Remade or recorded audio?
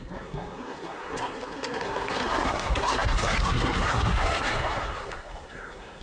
remade